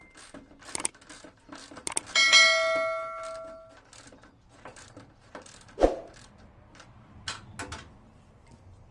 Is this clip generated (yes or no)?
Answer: no